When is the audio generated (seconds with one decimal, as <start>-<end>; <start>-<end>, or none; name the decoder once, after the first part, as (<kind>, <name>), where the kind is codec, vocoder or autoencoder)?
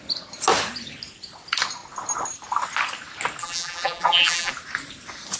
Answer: 3.4-4.5 (vocoder, BigVGAN v2)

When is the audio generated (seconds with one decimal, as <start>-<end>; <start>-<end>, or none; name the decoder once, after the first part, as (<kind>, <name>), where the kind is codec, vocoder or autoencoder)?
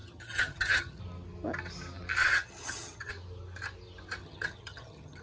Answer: 0.0-1.0 (vocoder, HiFi-GAN); 2.2-3.1; 4.2-5.2